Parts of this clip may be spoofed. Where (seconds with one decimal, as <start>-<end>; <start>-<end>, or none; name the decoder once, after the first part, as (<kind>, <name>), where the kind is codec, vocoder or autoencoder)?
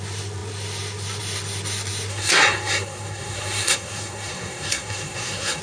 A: 2.1-5.6 (codec, SNAC)